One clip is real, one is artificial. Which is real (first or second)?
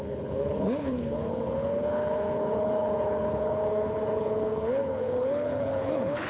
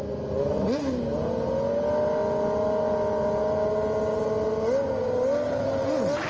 second